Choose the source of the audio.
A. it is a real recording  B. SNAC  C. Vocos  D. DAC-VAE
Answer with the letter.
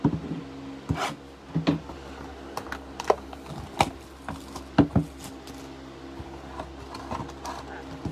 A